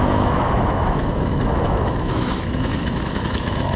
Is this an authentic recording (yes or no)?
no